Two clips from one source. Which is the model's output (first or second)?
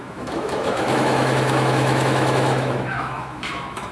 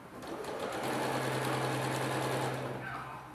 first